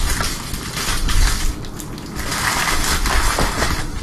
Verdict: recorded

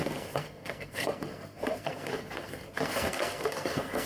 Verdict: remade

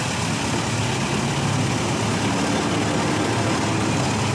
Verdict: recorded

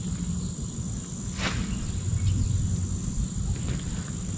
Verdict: recorded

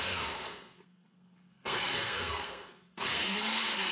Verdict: remade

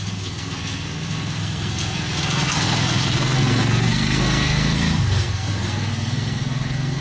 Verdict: remade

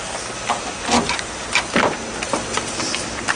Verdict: recorded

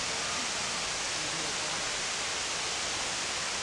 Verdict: recorded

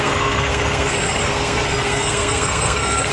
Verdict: remade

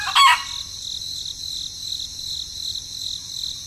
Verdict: recorded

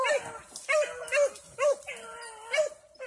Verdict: recorded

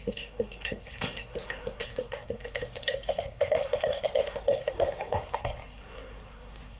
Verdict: remade